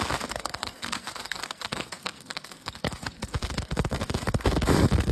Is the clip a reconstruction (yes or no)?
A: yes